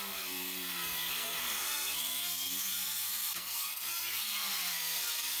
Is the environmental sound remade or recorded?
remade